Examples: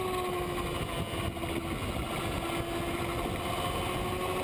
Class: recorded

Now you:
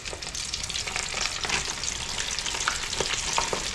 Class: recorded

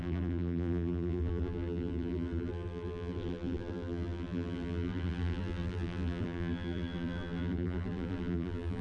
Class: remade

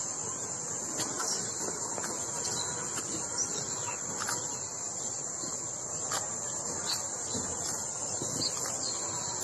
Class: recorded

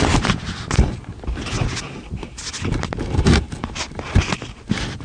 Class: recorded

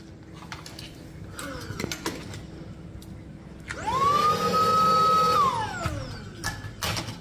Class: recorded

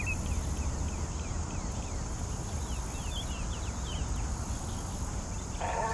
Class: recorded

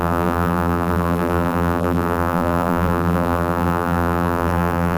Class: remade